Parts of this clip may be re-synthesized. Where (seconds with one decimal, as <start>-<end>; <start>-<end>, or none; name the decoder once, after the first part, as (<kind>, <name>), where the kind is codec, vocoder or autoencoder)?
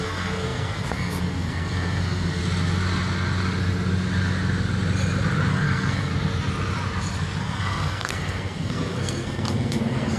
0.0-2.4 (codec, SNAC); 5.5-6.1; 7.4-10.2